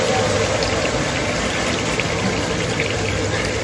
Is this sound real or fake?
real